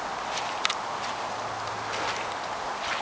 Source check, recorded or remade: recorded